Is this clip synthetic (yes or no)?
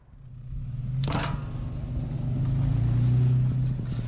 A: no